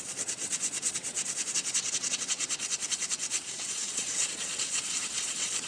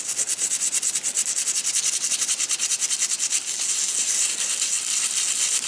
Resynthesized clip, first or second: first